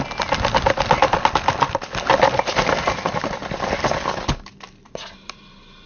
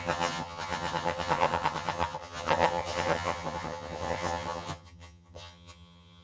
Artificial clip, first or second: second